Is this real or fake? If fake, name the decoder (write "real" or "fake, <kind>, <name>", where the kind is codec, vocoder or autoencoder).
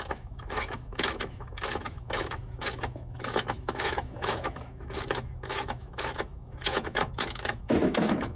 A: fake, autoencoder, DAC-VAE